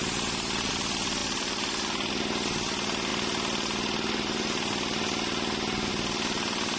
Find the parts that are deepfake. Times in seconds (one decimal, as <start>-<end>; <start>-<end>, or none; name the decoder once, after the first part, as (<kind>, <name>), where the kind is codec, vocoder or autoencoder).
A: none